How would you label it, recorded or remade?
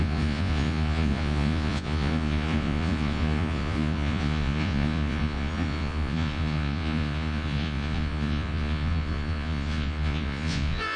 remade